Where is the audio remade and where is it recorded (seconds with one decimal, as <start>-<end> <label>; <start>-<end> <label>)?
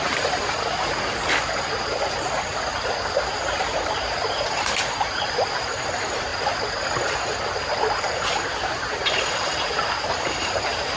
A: 0.0-0.4 remade; 0.4-3.6 recorded; 3.6-6.3 remade; 6.3-8.1 recorded; 8.1-11.0 remade